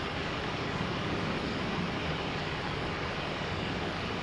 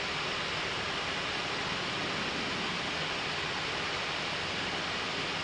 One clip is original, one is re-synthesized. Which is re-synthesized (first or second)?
first